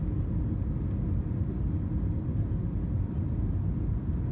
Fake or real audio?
real